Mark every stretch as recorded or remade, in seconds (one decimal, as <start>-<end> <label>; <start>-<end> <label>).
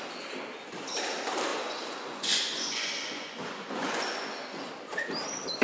0.0-1.5 recorded; 1.5-4.7 remade; 4.7-5.6 recorded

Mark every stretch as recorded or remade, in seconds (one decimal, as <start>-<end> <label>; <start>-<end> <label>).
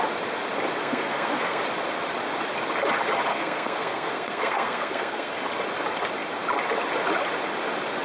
0.0-0.8 recorded; 0.8-1.6 remade; 1.6-3.3 recorded; 3.3-5.3 remade; 5.3-8.0 recorded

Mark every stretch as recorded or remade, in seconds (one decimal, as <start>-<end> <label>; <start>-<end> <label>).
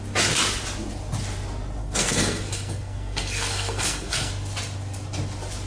0.0-1.8 recorded; 1.8-4.3 remade; 4.3-5.7 recorded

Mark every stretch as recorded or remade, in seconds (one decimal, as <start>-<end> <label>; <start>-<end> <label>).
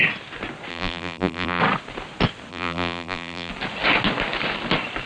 0.0-0.7 recorded; 0.7-1.6 remade; 1.6-2.5 recorded; 2.5-3.5 remade; 3.5-5.1 recorded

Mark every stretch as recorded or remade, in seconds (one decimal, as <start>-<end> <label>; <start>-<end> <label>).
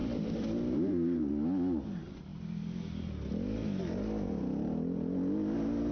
0.0-1.3 remade; 1.3-5.9 recorded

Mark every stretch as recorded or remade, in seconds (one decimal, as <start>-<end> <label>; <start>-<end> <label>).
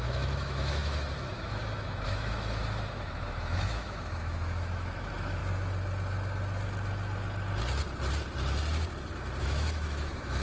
0.0-5.4 remade; 5.4-9.4 recorded; 9.4-10.4 remade